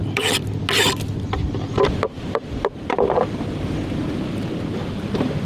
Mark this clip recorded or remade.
recorded